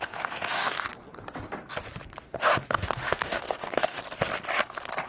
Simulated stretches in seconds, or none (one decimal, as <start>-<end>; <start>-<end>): 0.0-0.9; 2.2-4.0